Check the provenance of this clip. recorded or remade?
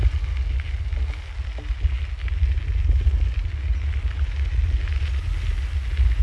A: recorded